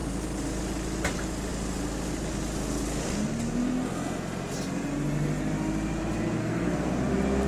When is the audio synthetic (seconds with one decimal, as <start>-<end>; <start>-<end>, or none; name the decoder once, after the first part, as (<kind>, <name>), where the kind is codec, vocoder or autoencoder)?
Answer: 6.4-7.1 (codec, SNAC)